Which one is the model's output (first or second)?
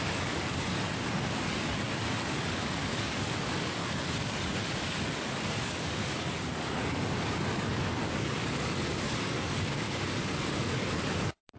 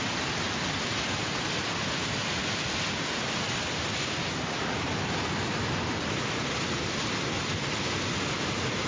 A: first